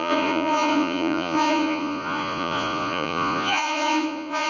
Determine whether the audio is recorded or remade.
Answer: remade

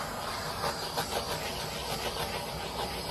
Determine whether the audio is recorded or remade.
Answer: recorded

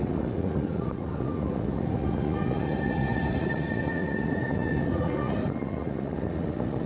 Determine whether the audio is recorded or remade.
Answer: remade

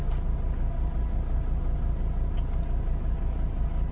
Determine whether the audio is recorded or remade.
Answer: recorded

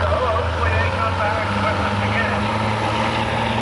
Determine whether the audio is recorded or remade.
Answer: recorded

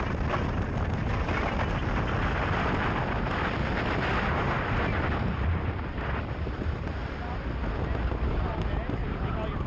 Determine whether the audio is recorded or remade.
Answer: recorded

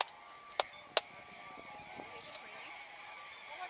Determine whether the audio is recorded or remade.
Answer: recorded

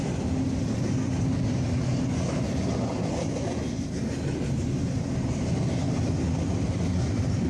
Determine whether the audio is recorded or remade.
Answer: recorded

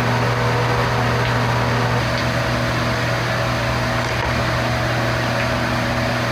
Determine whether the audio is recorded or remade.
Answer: recorded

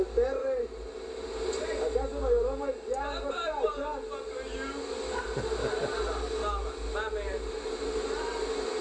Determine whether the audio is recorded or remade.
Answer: recorded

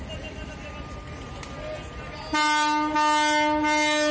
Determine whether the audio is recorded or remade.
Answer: recorded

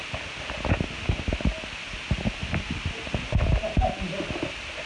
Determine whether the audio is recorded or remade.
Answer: recorded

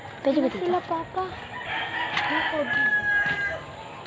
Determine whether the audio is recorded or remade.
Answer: recorded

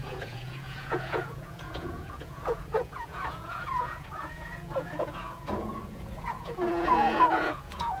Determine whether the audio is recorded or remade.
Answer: remade